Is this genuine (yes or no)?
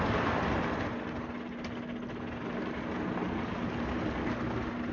yes